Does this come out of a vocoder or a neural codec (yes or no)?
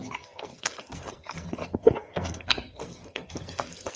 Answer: yes